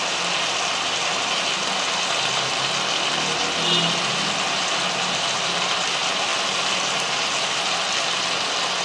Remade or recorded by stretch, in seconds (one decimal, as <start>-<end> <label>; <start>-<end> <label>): 0.0-8.8 recorded